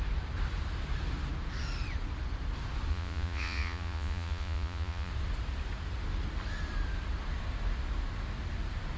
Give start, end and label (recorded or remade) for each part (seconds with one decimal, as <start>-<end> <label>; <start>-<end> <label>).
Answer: 0.0-2.9 recorded; 2.9-5.1 remade; 5.1-9.0 recorded